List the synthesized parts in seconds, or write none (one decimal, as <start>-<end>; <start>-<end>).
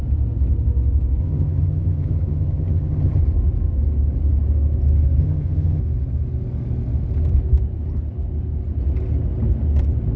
1.2-3.2; 5.2-5.8